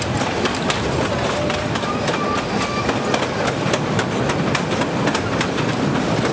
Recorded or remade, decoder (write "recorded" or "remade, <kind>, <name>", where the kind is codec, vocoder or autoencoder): recorded